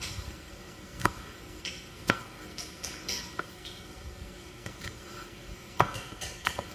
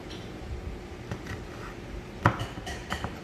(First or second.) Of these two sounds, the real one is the second